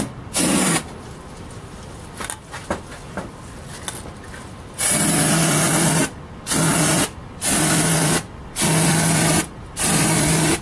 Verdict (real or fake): real